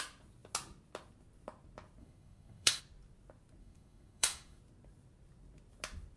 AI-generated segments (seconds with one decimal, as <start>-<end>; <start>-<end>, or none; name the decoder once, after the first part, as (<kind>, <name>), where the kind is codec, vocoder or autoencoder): 2.0-2.8 (codec, SNAC); 3.6-4.6